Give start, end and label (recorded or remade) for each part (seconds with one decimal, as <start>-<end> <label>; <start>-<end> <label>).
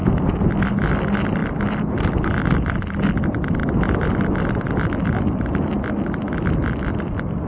0.0-0.7 remade; 0.7-7.5 recorded